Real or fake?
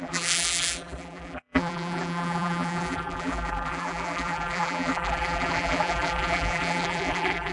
fake